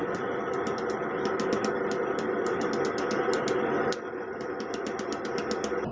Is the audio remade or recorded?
recorded